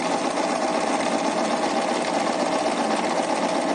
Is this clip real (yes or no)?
yes